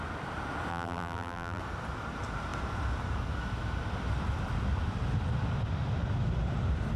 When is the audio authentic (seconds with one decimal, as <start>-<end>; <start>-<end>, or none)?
0.0-0.7; 1.6-7.0